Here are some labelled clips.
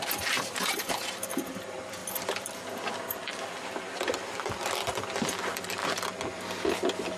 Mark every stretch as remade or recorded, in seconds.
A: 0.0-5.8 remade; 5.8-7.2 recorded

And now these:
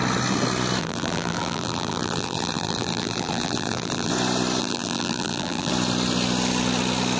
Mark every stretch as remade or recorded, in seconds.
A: 0.0-0.8 recorded; 0.8-4.1 remade; 4.1-4.6 recorded; 4.6-5.7 remade; 5.7-7.2 recorded

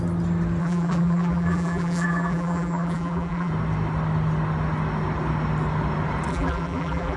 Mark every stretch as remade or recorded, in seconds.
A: 0.0-0.6 recorded; 0.6-3.5 remade; 3.5-6.3 recorded; 6.3-7.2 remade

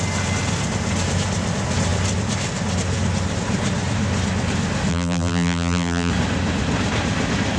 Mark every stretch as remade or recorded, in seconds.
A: 0.0-4.9 recorded; 4.9-6.1 remade; 6.1-7.6 recorded

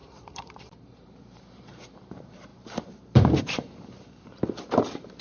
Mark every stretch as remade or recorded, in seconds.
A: 0.0-4.3 remade; 4.3-5.2 recorded

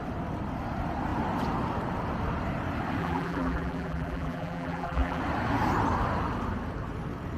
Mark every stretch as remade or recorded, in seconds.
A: 0.0-3.0 recorded; 3.0-5.2 remade; 5.2-7.4 recorded